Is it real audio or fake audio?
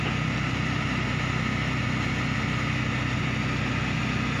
real